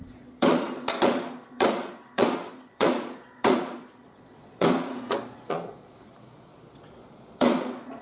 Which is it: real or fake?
fake